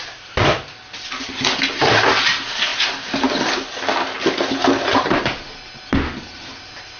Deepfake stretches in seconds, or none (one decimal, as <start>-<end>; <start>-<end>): none